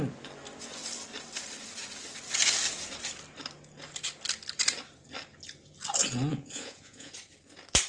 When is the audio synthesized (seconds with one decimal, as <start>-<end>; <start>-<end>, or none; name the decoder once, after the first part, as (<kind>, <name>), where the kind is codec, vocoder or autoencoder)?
6.3-7.1 (vocoder, Vocos)